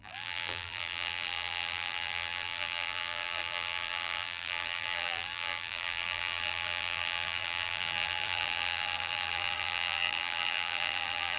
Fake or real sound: fake